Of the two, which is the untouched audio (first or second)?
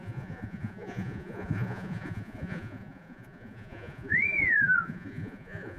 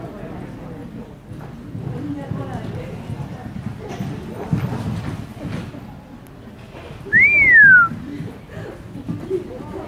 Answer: second